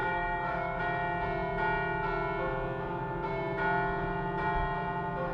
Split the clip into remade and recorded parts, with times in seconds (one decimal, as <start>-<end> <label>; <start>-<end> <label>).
0.0-0.8 remade; 0.8-5.3 recorded